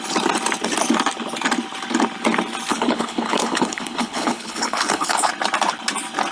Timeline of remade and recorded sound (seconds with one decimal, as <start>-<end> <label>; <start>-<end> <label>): 0.0-2.7 recorded; 2.7-5.3 remade; 5.3-6.3 recorded